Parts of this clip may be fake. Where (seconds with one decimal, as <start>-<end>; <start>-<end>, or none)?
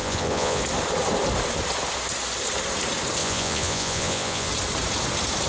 0.0-0.6; 3.2-4.5